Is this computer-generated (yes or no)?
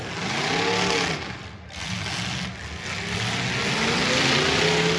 no